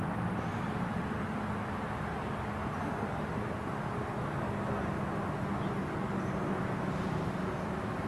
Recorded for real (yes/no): yes